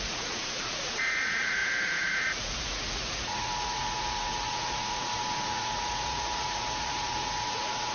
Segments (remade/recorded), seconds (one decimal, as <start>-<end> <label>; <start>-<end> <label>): 0.0-7.9 remade